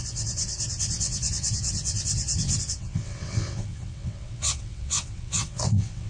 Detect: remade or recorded remade